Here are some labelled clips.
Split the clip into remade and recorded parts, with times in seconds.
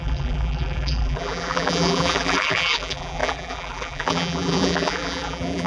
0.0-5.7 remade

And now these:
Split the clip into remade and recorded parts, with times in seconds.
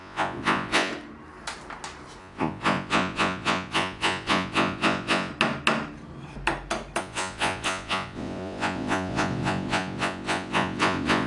0.0-0.9 remade; 0.9-2.2 recorded; 2.2-5.3 remade; 5.3-7.0 recorded; 7.0-11.3 remade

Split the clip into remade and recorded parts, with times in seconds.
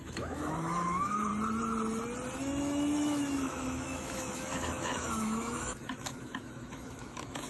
0.0-1.3 remade; 1.3-2.4 recorded; 2.4-7.5 remade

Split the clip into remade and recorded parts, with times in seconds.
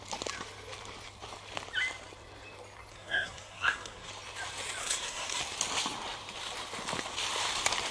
0.0-2.9 recorded; 2.9-4.1 remade; 4.1-4.8 recorded; 4.8-5.4 remade; 5.4-7.9 recorded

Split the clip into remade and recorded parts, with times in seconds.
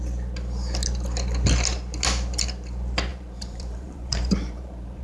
0.0-3.1 recorded; 3.1-5.0 remade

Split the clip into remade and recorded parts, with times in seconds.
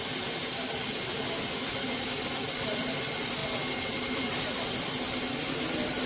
0.0-3.4 remade; 3.4-3.9 recorded; 3.9-6.1 remade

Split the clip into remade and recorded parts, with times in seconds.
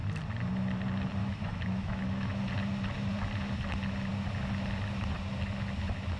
0.0-1.2 recorded; 1.2-2.5 remade; 2.5-6.2 recorded